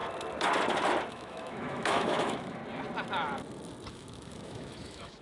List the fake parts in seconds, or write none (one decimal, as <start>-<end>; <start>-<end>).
1.1-2.6; 3.9-5.2